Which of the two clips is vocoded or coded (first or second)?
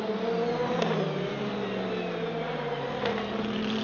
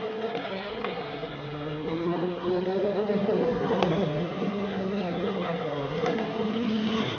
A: second